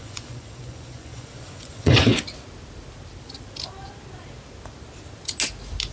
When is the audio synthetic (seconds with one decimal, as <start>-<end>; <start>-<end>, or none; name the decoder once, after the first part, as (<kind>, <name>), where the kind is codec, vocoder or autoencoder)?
0.0-2.1 (vocoder, Vocos)